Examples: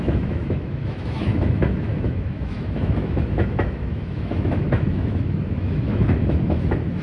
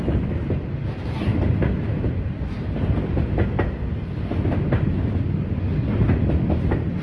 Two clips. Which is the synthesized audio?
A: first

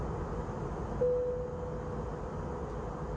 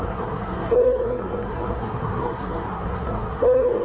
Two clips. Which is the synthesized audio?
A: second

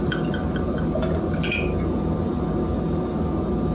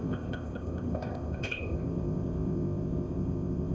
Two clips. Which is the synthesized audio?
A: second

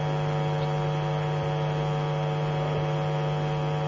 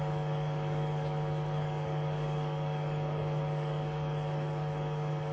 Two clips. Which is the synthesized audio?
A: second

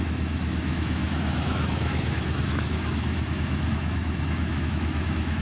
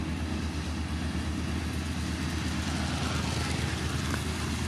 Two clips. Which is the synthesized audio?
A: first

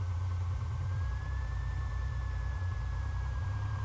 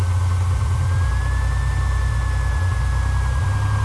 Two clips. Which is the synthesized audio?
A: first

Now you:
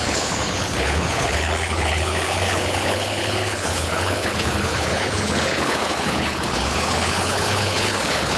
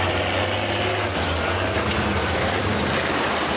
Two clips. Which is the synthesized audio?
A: first